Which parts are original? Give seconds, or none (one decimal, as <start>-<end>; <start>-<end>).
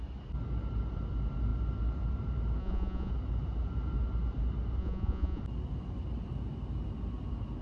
0.0-2.6; 3.1-4.8; 5.4-7.6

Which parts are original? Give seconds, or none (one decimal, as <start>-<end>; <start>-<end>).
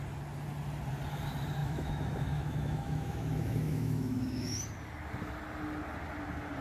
0.0-1.6; 4.6-6.6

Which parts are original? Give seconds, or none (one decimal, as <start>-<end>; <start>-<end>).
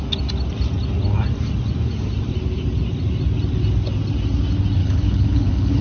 0.0-4.8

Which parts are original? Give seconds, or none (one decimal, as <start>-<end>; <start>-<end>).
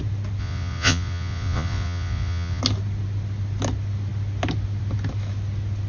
0.0-0.4; 2.6-5.9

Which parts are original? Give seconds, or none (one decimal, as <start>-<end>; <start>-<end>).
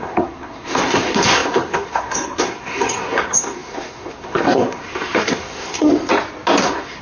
5.9-6.6